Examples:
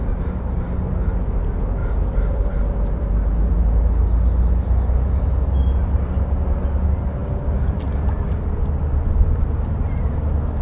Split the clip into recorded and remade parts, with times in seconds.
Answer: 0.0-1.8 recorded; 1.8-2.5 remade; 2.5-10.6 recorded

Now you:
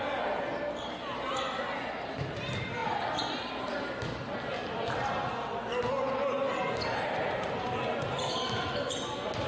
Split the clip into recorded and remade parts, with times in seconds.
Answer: 0.0-9.5 recorded

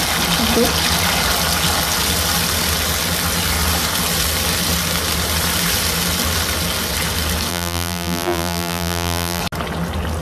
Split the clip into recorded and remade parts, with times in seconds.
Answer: 0.0-7.5 recorded; 7.5-9.4 remade; 9.4-10.2 recorded